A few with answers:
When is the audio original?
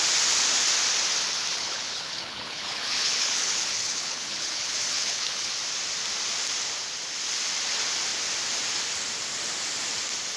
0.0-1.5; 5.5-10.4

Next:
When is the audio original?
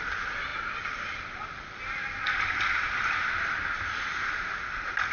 0.0-5.1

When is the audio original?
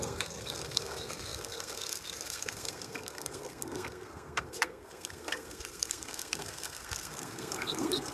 none